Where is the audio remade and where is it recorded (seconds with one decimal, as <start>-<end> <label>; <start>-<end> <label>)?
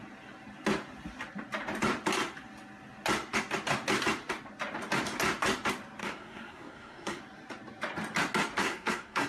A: 0.0-6.0 recorded; 6.0-7.2 remade; 7.2-8.6 recorded; 8.6-9.3 remade